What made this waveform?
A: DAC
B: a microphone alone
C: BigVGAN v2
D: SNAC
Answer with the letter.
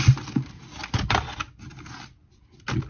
B